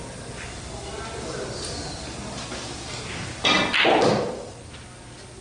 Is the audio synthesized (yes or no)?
no